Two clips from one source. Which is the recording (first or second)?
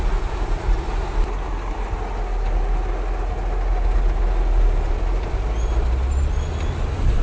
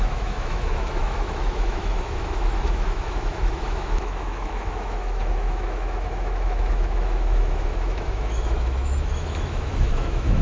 first